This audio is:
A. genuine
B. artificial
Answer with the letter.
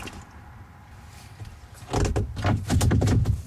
A